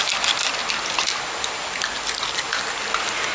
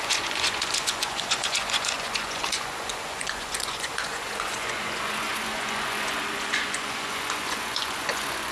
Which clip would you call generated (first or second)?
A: second